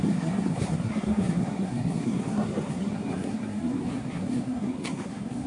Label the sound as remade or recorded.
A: remade